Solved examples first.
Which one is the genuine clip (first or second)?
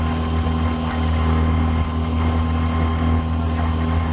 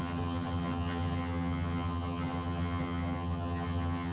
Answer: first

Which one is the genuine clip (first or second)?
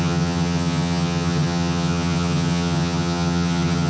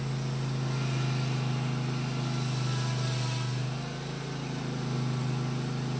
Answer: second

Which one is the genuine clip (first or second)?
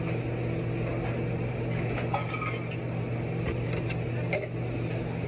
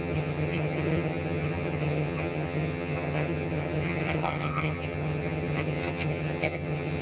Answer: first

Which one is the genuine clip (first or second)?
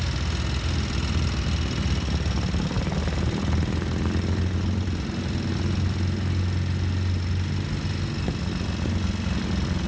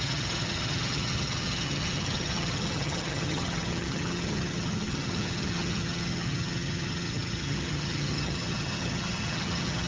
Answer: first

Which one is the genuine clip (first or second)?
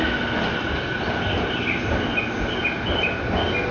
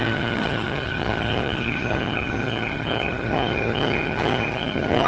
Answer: first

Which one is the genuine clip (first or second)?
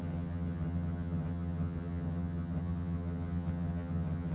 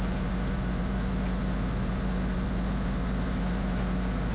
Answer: second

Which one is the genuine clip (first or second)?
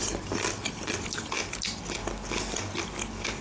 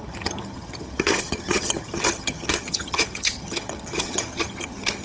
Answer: first